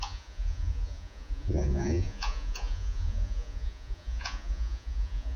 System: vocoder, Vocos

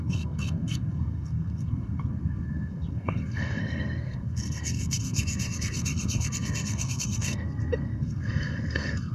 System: codec, SNAC